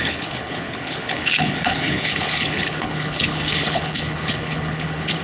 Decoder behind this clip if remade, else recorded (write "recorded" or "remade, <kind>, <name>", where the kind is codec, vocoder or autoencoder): remade, codec, HILCodec